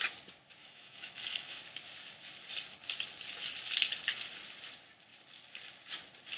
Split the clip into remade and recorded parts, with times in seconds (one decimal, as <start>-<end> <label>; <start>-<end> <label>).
0.0-0.6 recorded; 0.6-1.6 remade; 1.6-6.4 recorded